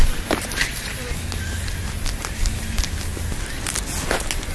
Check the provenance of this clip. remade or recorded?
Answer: recorded